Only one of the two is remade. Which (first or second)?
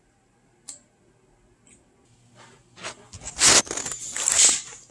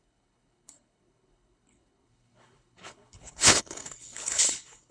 second